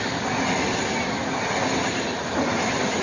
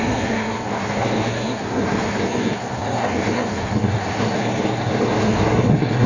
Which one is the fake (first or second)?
second